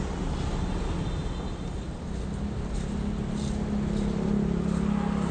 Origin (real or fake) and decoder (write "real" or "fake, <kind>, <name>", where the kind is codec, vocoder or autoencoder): real